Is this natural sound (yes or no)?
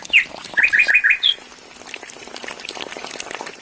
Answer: yes